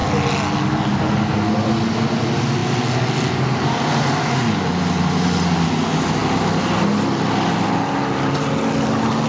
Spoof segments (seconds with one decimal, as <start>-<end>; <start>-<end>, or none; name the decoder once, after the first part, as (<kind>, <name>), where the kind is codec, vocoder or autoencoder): none